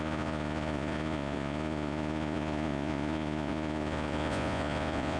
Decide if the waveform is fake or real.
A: fake